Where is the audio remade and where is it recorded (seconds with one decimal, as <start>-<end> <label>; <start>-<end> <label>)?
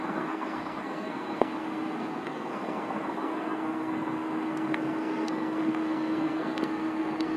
0.0-7.4 remade